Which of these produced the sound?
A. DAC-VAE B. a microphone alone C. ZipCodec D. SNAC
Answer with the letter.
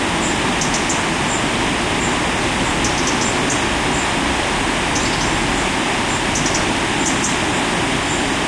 B